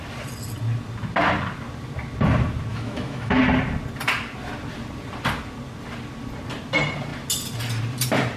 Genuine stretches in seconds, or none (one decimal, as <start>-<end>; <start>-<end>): 0.0-2.7; 3.4-8.4